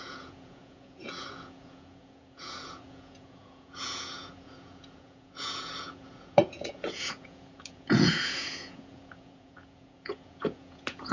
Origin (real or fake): fake